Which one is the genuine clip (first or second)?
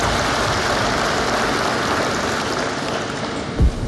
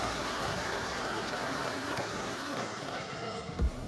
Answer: first